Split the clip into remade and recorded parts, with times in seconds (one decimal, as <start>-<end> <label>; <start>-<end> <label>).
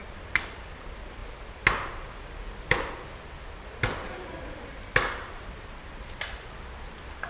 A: 0.0-7.3 recorded